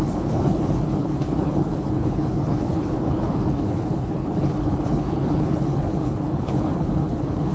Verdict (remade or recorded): remade